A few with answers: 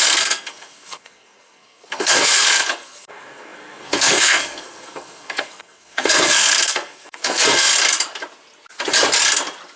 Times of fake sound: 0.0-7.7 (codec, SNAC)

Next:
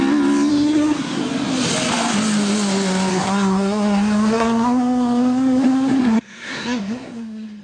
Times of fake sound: 0.5-1.2 (codec, SNAC); 3.1-7.6

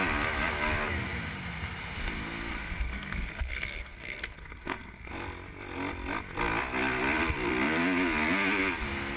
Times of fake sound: 2.5-5.1 (codec, SNAC)

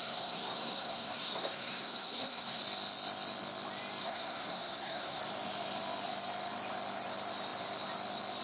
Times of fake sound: 0.0-2.6 (codec, SNAC); 4.0-5.2

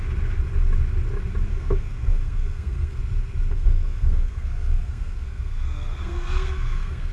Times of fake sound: 1.5-3.0 (codec, SNAC); 3.5-7.1

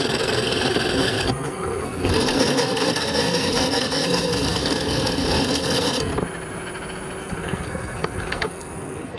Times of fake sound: 0.0-6.1 (codec, SNAC); 7.2-9.2

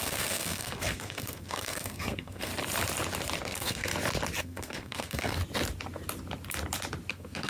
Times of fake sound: 0.0-2.5 (codec, SNAC); 3.4-3.9; 4.4-5.4; 7.1-7.5